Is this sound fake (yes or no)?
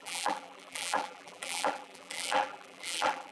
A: yes